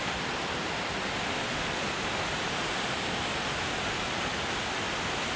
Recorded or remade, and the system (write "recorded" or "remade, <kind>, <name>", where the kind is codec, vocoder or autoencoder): recorded